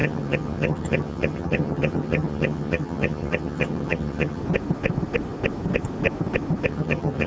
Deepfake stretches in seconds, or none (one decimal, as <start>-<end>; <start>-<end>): 0.0-4.4; 6.7-7.3